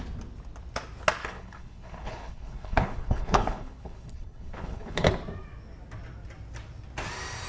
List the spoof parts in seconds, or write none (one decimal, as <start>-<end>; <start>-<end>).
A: 1.2-5.1